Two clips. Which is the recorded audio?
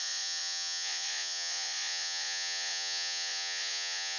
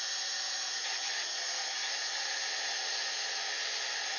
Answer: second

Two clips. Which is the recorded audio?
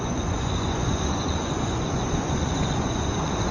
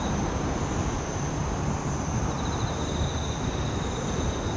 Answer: second